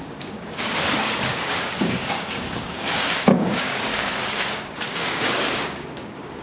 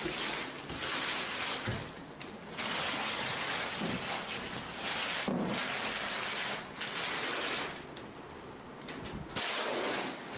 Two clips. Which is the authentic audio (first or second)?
second